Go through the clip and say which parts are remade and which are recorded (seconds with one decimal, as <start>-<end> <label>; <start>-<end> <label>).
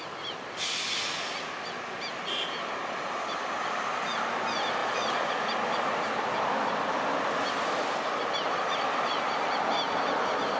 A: 0.0-4.8 recorded; 4.8-7.4 remade; 7.4-10.6 recorded